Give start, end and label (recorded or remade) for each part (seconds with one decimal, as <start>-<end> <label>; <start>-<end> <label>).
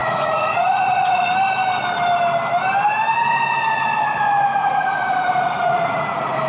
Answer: 0.0-1.2 remade; 1.2-4.6 recorded; 4.6-6.0 remade; 6.0-6.5 recorded